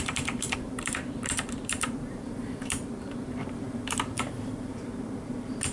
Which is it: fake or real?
fake